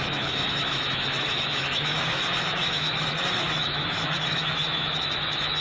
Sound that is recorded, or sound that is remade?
remade